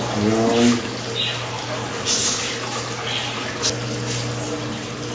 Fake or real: real